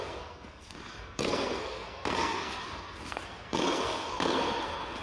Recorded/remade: remade